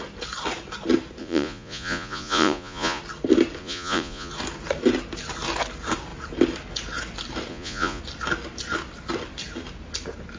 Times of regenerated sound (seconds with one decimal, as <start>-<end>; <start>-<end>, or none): 1.2-3.0; 3.6-4.3; 7.5-8.0